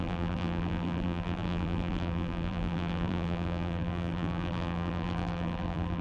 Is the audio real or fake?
fake